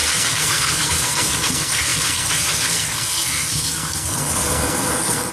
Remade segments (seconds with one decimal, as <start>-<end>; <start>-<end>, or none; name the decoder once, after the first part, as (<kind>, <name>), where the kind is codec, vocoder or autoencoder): 0.0-5.3 (codec, SNAC)

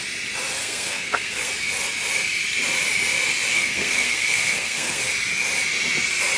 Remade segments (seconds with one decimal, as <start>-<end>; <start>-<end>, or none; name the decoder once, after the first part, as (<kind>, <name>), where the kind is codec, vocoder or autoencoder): 0.6-1.5 (codec, SNAC); 3.5-5.0

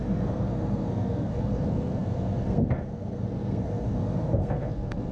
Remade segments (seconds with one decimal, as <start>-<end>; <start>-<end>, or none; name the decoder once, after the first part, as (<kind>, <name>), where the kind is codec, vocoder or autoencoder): 0.0-5.1 (codec, SNAC)

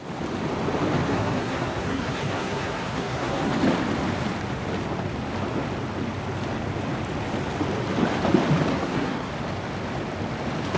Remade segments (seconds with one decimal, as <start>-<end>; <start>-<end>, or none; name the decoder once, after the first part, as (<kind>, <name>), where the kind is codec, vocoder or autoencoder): 1.1-3.5 (codec, SNAC); 8.7-9.3

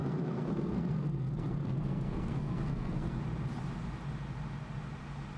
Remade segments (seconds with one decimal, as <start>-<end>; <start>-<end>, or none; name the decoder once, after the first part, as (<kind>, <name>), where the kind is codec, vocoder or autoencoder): 0.0-3.2 (codec, SNAC)

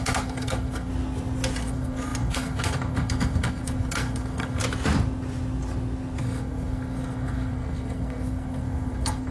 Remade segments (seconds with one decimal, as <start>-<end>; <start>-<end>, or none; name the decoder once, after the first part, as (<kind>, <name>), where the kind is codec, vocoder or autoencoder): 0.0-0.9 (codec, SNAC); 1.6-4.6; 6.2-9.3

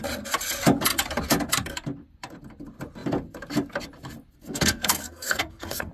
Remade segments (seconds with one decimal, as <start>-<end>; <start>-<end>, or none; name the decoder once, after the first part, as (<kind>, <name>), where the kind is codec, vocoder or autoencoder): 4.3-5.9 (codec, SNAC)

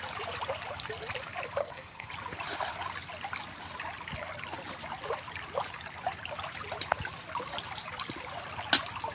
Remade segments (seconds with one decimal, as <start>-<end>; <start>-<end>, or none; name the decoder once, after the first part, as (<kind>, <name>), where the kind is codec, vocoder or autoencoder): 1.6-2.1 (codec, SNAC)